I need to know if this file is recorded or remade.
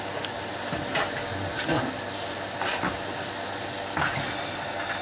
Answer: recorded